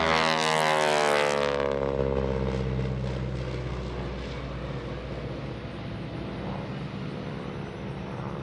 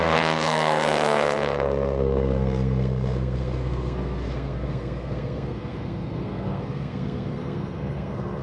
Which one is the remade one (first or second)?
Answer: second